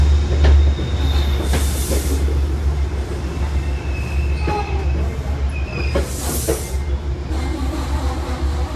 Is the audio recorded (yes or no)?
yes